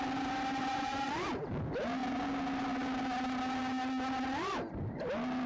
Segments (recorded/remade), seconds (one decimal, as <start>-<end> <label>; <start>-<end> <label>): 0.0-0.6 recorded; 0.6-1.1 remade; 1.1-5.5 recorded

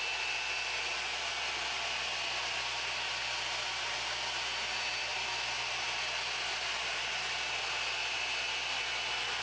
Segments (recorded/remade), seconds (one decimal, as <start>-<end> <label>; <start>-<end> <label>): 0.0-9.4 recorded

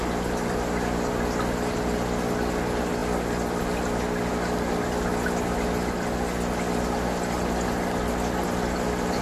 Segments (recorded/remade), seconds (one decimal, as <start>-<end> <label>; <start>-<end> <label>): 0.0-9.2 recorded

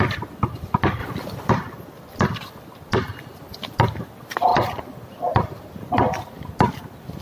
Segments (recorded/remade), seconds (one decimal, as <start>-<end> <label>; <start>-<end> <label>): 0.0-1.0 recorded; 1.0-1.5 remade; 1.5-4.5 recorded; 4.5-5.9 remade; 5.9-7.2 recorded

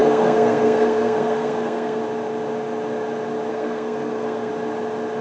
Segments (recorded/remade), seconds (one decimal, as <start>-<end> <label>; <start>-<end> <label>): 0.0-2.0 remade; 2.0-3.5 recorded; 3.5-4.5 remade; 4.5-5.2 recorded

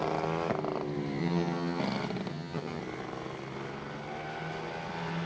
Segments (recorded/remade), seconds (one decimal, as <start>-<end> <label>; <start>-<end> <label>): 0.0-1.2 recorded; 1.2-1.8 remade; 1.8-2.3 recorded; 2.3-2.8 remade; 2.8-5.3 recorded

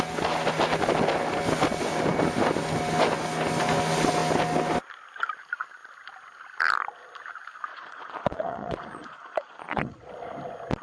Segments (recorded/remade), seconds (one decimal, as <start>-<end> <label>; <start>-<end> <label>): 0.0-7.7 recorded; 7.7-10.1 remade; 10.1-10.8 recorded